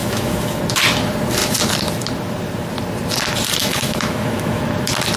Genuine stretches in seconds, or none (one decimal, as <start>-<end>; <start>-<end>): 0.6-3.6; 4.6-5.2